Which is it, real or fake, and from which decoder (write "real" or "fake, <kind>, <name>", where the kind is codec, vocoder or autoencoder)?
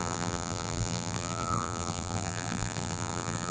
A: fake, vocoder, BigVGAN v2